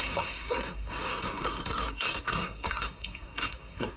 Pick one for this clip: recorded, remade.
remade